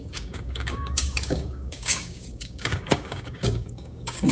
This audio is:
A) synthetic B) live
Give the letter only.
A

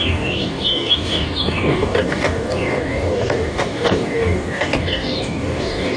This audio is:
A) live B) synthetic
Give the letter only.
B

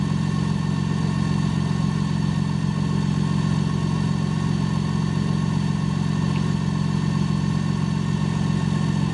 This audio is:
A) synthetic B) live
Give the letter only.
B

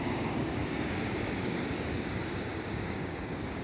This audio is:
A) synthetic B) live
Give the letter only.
A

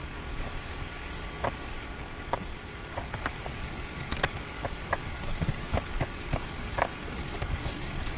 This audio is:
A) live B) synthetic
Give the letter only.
B